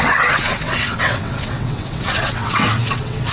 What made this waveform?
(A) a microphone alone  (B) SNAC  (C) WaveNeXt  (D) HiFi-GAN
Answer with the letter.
C